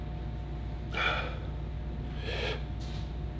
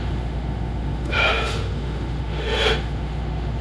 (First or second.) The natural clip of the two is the first